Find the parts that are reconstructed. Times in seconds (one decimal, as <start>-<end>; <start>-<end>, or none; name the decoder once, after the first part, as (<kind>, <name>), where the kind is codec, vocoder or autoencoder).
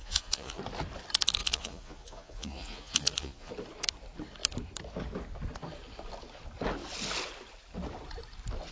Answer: 0.0-0.6 (vocoder, Vocos); 1.4-3.5